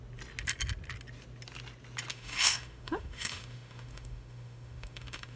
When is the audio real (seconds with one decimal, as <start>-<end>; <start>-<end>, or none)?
0.0-2.1